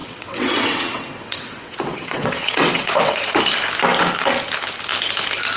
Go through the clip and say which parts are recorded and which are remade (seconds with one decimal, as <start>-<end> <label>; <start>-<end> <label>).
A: 0.0-3.4 remade; 3.4-5.6 recorded